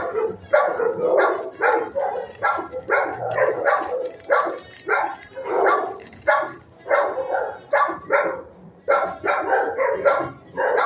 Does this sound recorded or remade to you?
remade